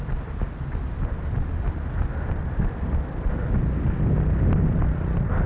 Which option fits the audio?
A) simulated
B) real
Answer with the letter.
B